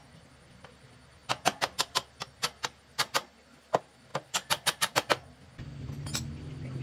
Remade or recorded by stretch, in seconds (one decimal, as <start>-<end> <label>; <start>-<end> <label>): 0.0-6.8 recorded